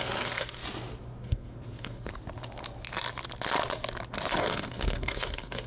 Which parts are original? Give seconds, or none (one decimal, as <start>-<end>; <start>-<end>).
0.6-1.2; 2.1-4.4